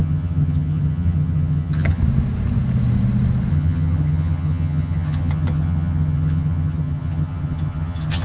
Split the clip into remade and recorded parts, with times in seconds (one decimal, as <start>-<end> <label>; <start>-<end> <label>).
0.0-2.0 remade; 2.0-3.5 recorded; 3.5-8.2 remade